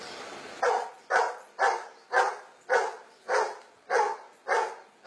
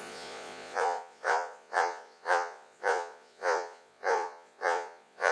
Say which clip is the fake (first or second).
second